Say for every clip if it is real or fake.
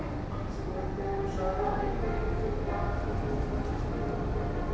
real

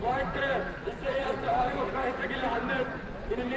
real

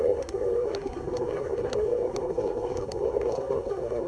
fake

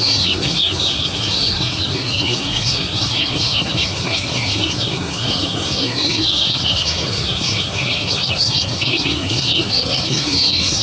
fake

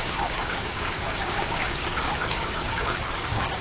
fake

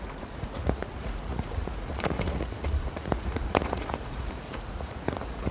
fake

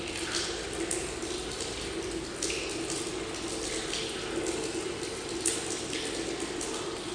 real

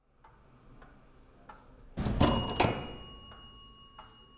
real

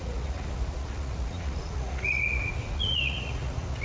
fake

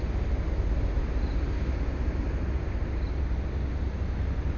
real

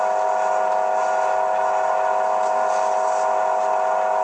real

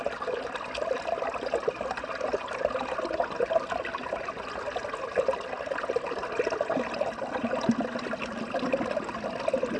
real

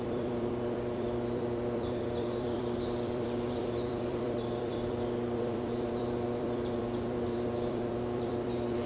fake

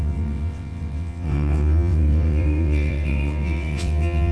fake